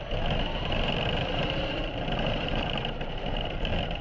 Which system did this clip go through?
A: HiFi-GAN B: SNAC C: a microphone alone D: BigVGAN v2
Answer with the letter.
D